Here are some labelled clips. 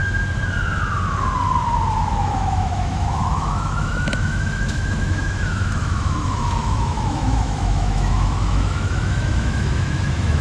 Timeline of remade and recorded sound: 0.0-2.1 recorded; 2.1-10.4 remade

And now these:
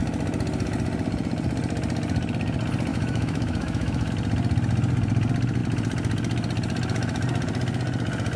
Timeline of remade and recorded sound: 0.0-2.9 recorded; 2.9-4.1 remade; 4.1-8.4 recorded

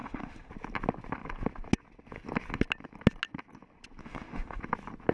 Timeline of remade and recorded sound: 0.0-0.5 remade; 0.5-4.0 recorded; 4.0-4.6 remade; 4.6-5.1 recorded

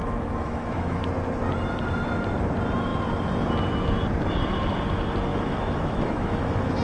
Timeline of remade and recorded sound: 0.0-1.0 remade; 1.0-5.3 recorded; 5.3-6.8 remade